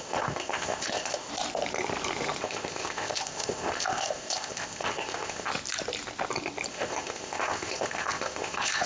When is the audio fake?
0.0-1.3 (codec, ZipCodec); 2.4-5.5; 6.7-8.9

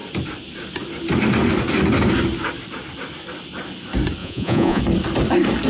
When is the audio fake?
4.2-4.8 (vocoder, Vocos)

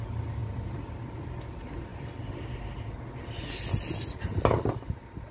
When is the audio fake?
none

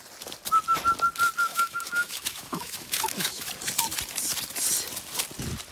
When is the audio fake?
1.5-3.5 (autoencoder, DAC-VAE)

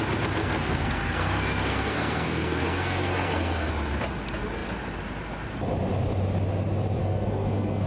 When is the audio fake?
0.4-3.7 (codec, SNAC); 7.0-7.9

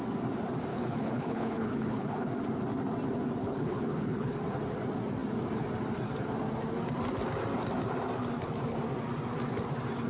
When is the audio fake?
0.7-2.3 (codec, HILCodec); 3.4-4.3

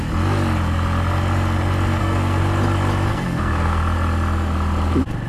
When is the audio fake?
2.0-2.4 (codec, SNAC); 3.1-3.8